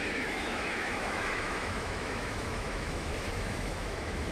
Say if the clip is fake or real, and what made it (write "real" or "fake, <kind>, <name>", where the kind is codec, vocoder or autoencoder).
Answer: fake, autoencoder, DAC-VAE